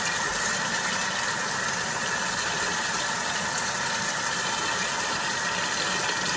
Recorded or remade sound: recorded